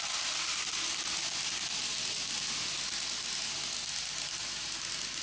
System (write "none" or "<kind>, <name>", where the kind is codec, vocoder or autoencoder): none